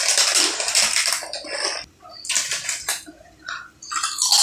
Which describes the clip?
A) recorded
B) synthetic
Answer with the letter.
A